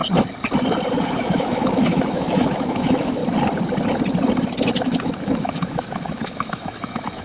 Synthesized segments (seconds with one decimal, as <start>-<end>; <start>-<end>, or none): 1.0-3.2; 4.8-7.2